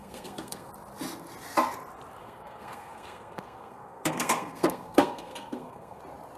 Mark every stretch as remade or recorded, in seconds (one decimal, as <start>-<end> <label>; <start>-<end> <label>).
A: 0.0-0.7 remade; 0.7-2.2 recorded; 2.2-6.0 remade; 6.0-6.4 recorded